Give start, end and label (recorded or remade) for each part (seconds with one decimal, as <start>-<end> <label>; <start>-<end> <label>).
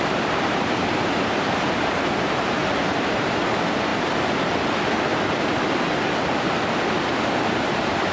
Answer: 0.0-3.9 remade; 3.9-7.5 recorded; 7.5-8.1 remade